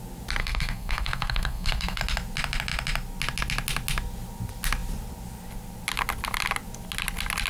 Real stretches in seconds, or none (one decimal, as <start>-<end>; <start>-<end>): 0.0-0.4; 2.0-7.5